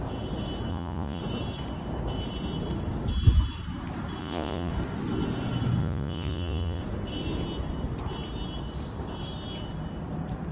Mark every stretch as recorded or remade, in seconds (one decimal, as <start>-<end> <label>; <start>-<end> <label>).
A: 0.0-0.7 recorded; 0.7-1.2 remade; 1.2-4.2 recorded; 4.2-4.7 remade; 4.7-5.8 recorded; 5.8-6.8 remade; 6.8-10.5 recorded